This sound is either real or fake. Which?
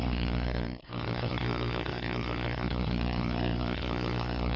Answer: fake